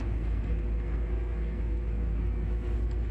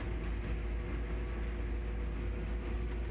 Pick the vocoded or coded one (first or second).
first